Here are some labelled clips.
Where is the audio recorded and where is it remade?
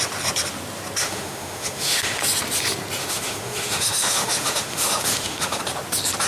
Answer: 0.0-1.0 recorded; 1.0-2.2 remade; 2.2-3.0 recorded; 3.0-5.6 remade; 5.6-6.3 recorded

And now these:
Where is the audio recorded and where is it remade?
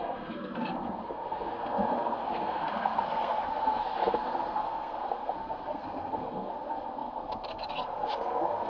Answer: 0.0-8.7 remade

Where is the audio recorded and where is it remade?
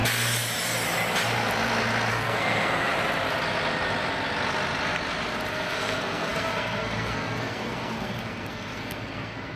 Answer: 0.0-2.1 recorded; 2.1-2.9 remade; 2.9-5.5 recorded; 5.5-9.6 remade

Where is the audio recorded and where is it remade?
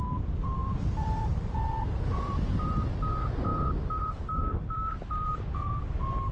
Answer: 0.0-3.5 remade; 3.5-4.1 recorded; 4.1-5.3 remade; 5.3-6.3 recorded